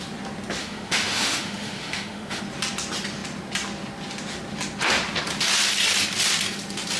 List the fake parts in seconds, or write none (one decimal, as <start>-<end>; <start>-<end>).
0.6-2.4